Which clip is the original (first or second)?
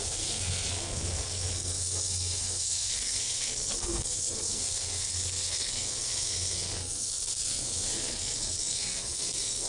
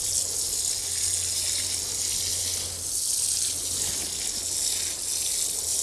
second